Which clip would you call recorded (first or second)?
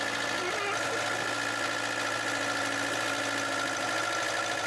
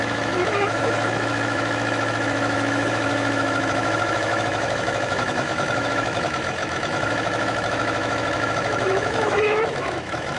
first